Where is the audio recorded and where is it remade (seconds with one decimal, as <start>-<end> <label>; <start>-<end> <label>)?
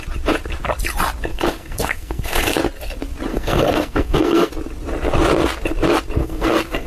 0.0-1.3 recorded; 1.3-2.5 remade; 2.5-3.3 recorded; 3.3-4.5 remade; 4.5-6.2 recorded; 6.2-6.9 remade